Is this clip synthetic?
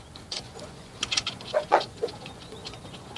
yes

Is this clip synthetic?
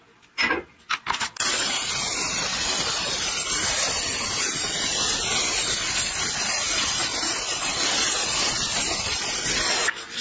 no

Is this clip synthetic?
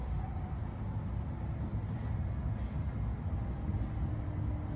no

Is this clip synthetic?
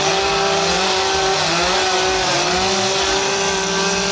no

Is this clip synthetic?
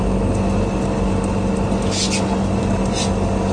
no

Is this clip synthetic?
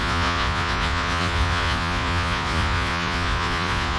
yes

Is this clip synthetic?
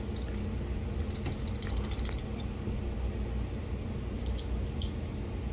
no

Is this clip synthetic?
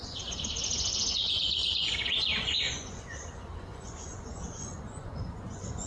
yes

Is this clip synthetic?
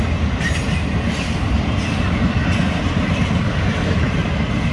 no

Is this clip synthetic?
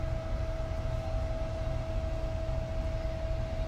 no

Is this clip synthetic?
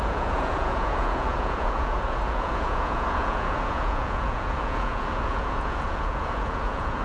yes